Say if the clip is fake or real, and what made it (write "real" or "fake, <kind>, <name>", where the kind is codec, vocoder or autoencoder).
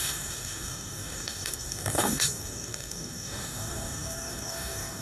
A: fake, codec, DAC